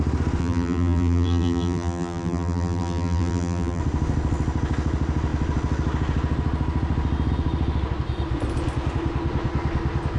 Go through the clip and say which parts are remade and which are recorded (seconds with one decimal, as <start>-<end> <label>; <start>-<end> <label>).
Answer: 0.0-0.4 recorded; 0.4-3.8 remade; 3.8-10.2 recorded